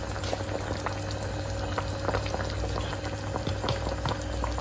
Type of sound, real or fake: real